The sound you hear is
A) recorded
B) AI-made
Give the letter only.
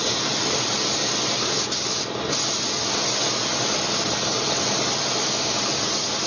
A